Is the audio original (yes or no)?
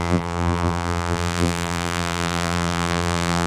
no